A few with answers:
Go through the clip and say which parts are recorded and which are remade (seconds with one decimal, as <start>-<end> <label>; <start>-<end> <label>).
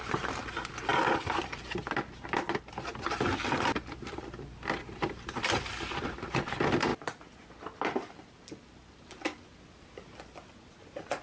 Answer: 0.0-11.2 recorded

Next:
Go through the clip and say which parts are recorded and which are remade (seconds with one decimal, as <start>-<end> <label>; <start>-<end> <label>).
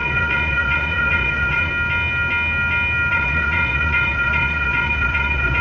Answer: 0.0-1.7 remade; 1.7-3.1 recorded; 3.1-5.6 remade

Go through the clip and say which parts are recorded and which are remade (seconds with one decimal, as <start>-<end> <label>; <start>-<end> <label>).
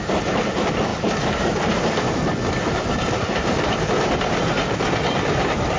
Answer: 0.0-0.9 recorded; 0.9-1.8 remade; 1.8-5.8 recorded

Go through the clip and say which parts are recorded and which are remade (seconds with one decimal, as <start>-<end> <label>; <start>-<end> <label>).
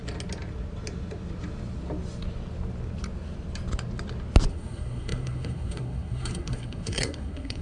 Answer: 0.0-4.5 recorded; 4.5-7.6 remade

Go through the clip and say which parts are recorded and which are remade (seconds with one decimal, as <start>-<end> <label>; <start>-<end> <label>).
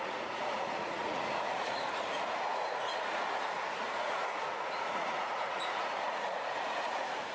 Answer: 0.0-7.3 remade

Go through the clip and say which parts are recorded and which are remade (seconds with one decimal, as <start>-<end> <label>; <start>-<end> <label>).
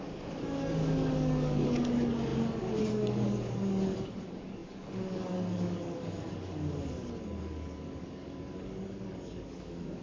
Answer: 0.0-10.0 remade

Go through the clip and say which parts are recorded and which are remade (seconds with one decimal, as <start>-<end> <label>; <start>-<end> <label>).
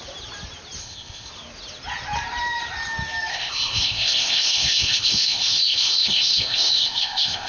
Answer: 0.0-0.8 recorded; 0.8-1.3 remade; 1.3-3.3 recorded; 3.3-7.5 remade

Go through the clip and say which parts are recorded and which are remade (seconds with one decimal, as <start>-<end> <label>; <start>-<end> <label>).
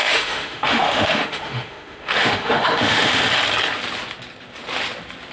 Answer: 0.0-3.2 remade; 3.2-5.3 recorded